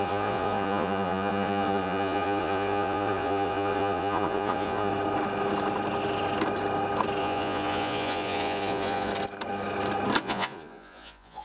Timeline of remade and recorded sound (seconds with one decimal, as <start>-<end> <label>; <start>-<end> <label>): 0.0-4.9 remade; 4.9-7.2 recorded; 7.2-9.1 remade; 9.1-10.2 recorded; 10.2-11.4 remade